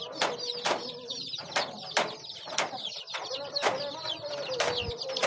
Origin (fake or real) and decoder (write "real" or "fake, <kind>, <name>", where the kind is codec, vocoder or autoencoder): real